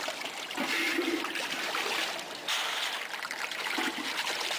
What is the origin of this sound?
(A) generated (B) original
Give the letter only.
A